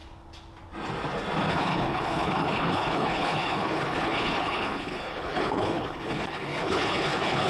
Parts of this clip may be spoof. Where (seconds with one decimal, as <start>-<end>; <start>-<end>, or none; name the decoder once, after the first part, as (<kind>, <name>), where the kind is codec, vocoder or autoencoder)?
1.5-7.5 (codec, HILCodec)